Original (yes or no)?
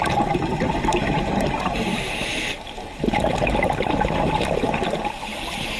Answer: yes